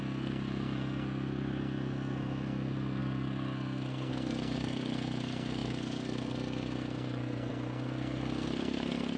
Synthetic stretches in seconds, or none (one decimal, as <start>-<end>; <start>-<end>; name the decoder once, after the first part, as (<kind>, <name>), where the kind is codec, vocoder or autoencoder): 0.0-9.2 (codec, SNAC)